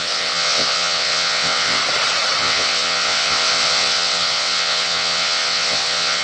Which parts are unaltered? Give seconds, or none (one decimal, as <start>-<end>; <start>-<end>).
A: 1.8-2.4